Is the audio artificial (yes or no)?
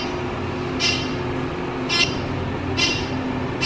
no